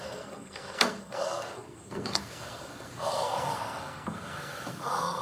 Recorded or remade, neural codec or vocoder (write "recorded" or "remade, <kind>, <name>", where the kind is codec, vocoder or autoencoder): remade, codec, SNAC